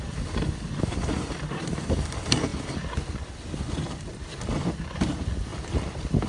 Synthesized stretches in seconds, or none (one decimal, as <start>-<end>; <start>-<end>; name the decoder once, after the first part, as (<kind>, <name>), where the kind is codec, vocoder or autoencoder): none